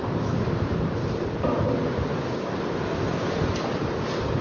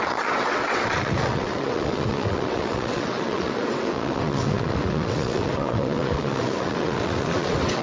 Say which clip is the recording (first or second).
first